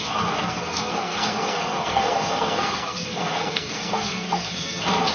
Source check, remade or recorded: remade